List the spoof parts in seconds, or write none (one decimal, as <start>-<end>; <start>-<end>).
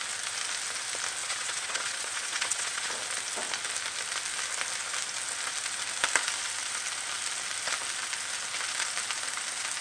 1.2-2.9